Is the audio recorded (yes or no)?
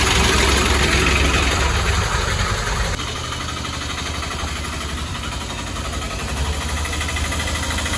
yes